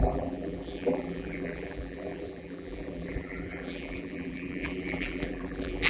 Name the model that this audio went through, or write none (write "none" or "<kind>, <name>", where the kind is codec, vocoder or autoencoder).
vocoder, BigVGAN v2